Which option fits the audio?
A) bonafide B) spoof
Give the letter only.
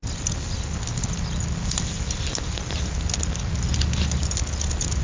A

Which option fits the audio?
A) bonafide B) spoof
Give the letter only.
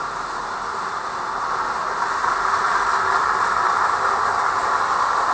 A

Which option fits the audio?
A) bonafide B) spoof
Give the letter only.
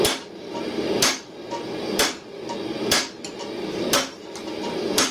B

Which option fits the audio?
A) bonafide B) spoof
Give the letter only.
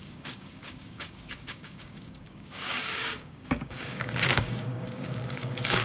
B